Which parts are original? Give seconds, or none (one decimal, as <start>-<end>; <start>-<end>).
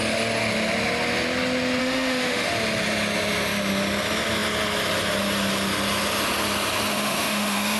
0.0-1.8; 2.5-6.9